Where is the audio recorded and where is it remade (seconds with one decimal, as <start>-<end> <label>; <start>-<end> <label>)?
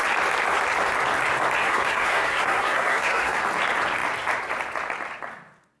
0.0-1.6 recorded; 1.6-3.4 remade; 3.4-5.8 recorded